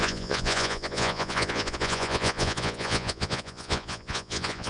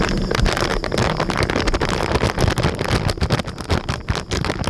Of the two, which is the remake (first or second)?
first